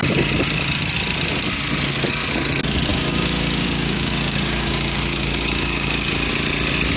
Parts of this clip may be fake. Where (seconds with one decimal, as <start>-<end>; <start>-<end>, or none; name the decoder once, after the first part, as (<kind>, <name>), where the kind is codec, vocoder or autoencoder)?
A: 2.9-6.3 (codec, DAC)